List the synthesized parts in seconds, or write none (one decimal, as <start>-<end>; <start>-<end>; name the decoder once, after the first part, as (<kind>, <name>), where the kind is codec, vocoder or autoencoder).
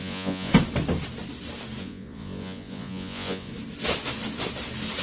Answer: 0.0-0.5 (vocoder, Vocos); 1.8-3.5